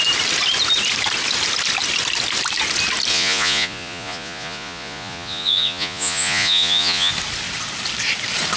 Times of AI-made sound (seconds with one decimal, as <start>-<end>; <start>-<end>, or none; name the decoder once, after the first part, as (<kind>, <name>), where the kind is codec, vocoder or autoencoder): 3.1-7.1 (vocoder, Vocos)